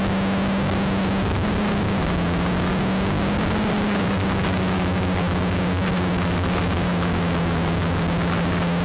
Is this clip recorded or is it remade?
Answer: recorded